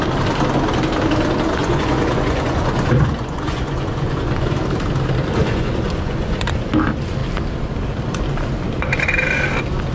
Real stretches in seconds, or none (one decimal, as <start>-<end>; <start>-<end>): 0.0-1.6; 4.6-5.4; 6.7-9.9